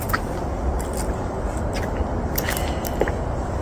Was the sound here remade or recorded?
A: recorded